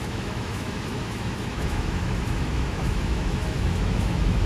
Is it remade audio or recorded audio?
remade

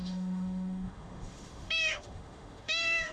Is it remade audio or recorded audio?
remade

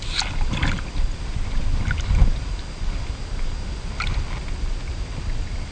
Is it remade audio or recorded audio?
recorded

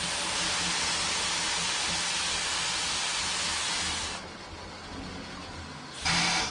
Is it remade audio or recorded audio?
recorded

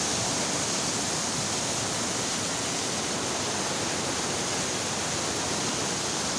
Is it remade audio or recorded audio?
recorded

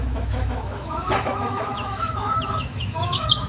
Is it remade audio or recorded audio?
remade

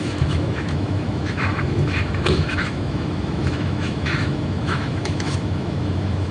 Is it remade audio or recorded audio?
remade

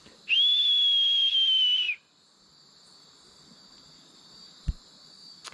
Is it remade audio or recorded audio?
recorded